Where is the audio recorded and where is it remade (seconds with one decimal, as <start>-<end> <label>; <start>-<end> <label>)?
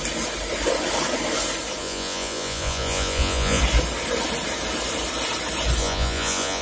0.0-1.8 recorded; 1.8-3.6 remade; 3.6-5.8 recorded; 5.8-6.6 remade